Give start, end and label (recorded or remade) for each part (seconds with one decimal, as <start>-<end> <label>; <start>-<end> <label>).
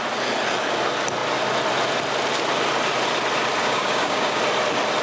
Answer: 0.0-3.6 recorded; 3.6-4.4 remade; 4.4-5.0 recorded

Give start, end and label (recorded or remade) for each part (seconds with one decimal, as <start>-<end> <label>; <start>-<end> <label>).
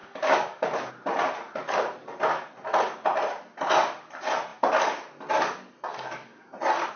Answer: 0.0-0.9 remade; 0.9-5.9 recorded; 5.9-6.5 remade; 6.5-7.0 recorded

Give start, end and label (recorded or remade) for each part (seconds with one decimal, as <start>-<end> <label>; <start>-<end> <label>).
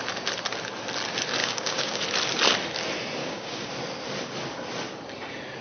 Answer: 0.0-1.4 recorded; 1.4-2.0 remade; 2.0-3.2 recorded; 3.2-3.7 remade; 3.7-5.6 recorded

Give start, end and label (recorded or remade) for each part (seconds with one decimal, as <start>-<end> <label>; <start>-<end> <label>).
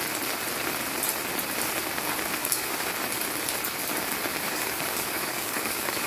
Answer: 0.0-2.4 recorded; 2.4-2.9 remade; 2.9-4.3 recorded; 4.3-6.1 remade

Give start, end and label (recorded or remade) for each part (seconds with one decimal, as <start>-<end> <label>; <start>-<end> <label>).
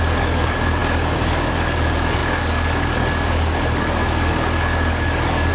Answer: 0.0-5.5 remade